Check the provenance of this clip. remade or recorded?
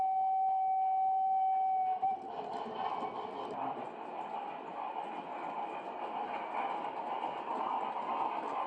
recorded